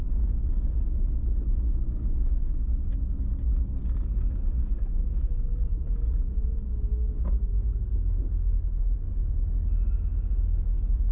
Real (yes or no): yes